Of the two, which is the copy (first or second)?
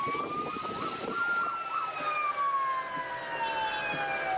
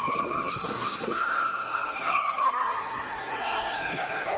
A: second